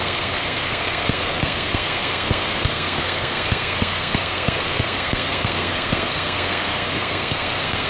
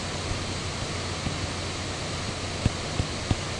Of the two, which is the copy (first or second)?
first